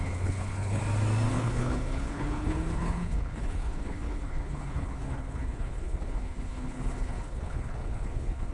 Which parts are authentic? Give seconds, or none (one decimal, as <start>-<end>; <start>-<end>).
0.8-1.3